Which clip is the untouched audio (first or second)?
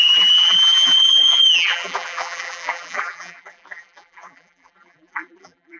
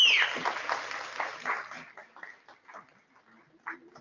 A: second